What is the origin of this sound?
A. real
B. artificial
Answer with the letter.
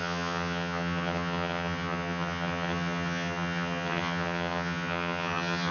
B